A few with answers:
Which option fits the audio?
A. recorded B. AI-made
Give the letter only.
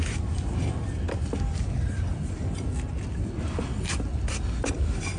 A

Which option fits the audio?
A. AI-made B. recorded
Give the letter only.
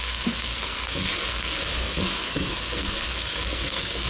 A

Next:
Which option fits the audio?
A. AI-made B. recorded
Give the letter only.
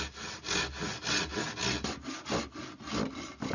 B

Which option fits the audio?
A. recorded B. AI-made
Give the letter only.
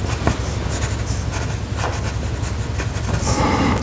A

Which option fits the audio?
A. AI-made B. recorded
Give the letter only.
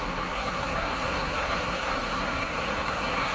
A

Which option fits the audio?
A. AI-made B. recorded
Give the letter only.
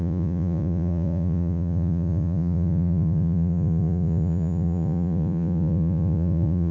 A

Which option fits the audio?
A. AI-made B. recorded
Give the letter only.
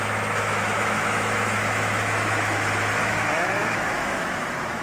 A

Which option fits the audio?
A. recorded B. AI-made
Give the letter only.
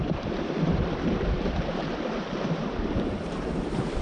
B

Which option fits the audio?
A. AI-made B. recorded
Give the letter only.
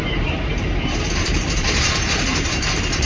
A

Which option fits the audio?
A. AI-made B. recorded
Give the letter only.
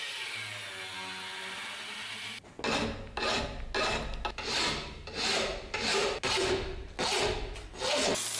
B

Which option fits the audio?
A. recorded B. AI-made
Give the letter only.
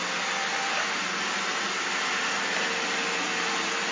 A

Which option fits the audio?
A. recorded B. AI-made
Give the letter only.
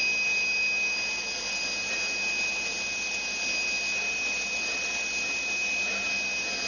A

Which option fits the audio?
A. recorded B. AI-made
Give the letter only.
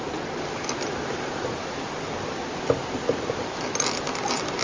B